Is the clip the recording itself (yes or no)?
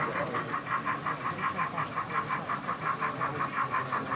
yes